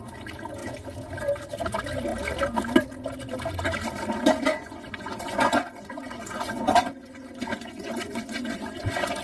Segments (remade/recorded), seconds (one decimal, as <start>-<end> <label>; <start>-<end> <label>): 0.0-4.5 recorded; 4.5-9.2 remade